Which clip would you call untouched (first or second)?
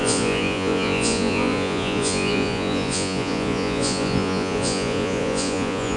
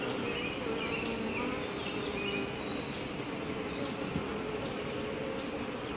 second